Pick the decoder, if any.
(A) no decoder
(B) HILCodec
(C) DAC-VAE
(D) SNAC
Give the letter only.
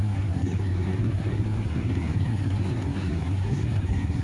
D